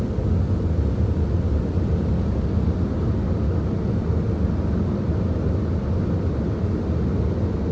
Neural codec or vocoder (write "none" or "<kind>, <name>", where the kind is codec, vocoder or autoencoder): none